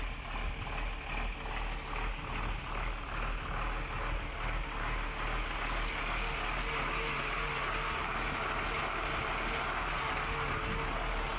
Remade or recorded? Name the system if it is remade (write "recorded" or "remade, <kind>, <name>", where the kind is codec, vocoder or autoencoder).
recorded